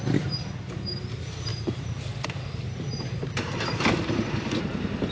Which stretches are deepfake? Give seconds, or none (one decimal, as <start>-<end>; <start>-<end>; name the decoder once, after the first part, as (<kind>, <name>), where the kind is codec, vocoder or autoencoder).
1.5-4.6 (vocoder, BigVGAN v2)